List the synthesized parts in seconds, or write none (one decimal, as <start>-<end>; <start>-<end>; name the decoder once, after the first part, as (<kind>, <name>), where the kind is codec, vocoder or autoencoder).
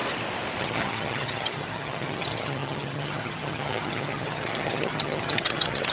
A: 0.6-5.9 (vocoder, HiFi-GAN)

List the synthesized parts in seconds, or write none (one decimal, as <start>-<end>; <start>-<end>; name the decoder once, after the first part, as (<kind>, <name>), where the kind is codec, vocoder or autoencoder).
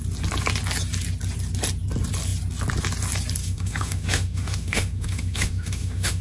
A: 3.4-6.2 (autoencoder, DAC-VAE)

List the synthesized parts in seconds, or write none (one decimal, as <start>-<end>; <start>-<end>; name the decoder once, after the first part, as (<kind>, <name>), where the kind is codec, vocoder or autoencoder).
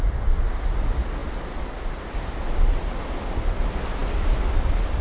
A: none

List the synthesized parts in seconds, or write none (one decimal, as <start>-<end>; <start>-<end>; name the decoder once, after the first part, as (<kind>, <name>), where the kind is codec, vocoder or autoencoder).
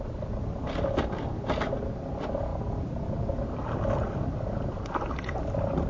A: none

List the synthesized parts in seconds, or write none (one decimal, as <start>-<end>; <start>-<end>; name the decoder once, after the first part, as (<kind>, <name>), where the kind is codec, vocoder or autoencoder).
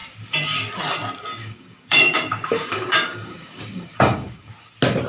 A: 1.4-4.5 (codec, DAC)